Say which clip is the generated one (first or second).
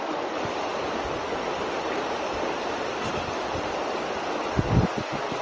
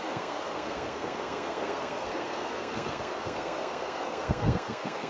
second